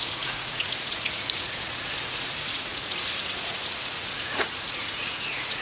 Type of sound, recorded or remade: remade